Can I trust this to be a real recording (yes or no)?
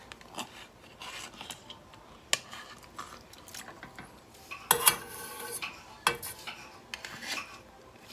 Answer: yes